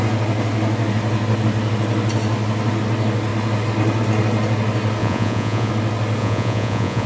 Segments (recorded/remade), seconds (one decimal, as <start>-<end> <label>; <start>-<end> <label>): 0.0-5.0 recorded; 5.0-5.7 remade; 5.7-6.2 recorded; 6.2-7.1 remade